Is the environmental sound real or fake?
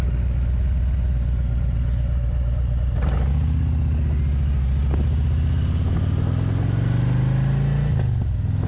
real